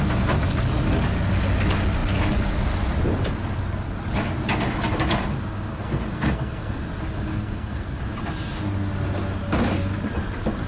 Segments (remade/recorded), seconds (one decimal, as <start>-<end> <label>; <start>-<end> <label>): 0.0-5.7 recorded; 5.7-6.8 remade; 6.8-7.3 recorded; 7.3-8.0 remade; 8.0-10.7 recorded